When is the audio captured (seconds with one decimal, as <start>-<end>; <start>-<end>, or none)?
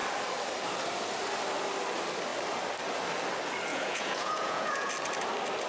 0.0-3.7; 4.9-5.7